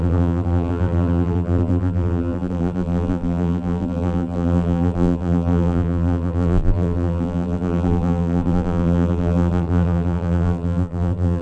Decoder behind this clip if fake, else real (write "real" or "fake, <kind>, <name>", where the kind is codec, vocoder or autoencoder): fake, vocoder, BigVGAN v2